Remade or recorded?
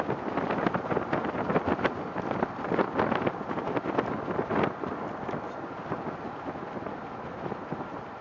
recorded